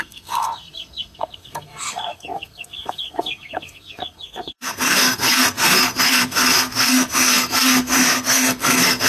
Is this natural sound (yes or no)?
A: no